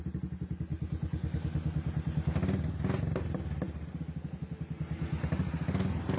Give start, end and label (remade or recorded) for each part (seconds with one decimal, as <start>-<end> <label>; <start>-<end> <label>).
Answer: 0.0-6.2 recorded